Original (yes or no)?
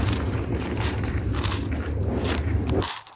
no